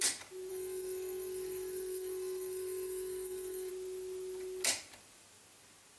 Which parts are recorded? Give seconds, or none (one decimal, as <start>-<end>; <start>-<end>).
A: 0.0-0.5; 3.7-6.0